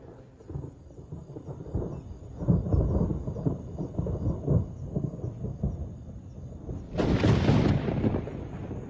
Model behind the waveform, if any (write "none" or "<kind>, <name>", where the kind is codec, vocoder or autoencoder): none